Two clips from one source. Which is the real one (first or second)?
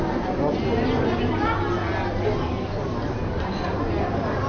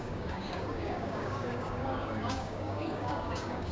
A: first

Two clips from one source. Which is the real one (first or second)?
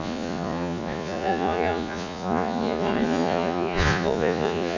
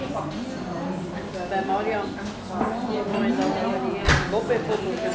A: second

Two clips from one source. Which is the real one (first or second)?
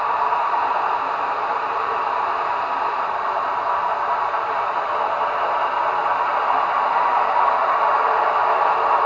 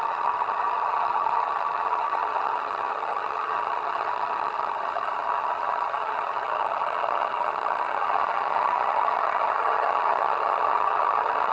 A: first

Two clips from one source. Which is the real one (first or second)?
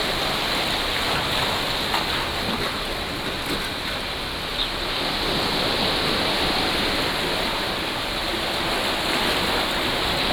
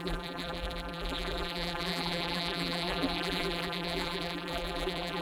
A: first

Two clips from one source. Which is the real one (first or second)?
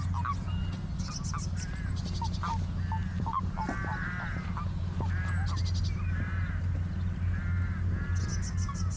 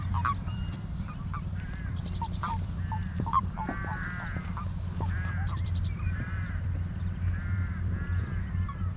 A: first